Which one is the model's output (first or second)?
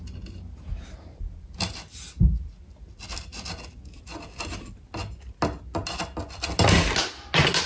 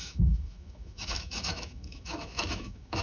second